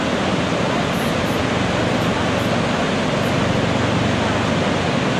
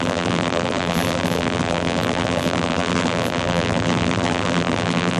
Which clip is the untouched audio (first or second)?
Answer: first